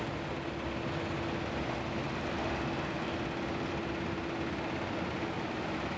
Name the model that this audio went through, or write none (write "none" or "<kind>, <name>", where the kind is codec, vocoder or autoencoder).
none